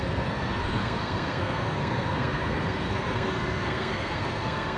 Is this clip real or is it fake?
fake